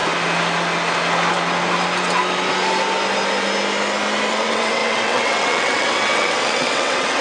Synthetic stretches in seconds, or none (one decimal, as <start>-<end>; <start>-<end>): 4.3-7.2